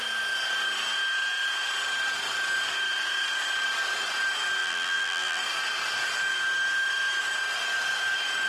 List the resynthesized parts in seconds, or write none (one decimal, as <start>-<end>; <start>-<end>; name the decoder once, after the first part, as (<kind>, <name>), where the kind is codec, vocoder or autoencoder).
4.6-5.4 (vocoder, BigVGAN v2)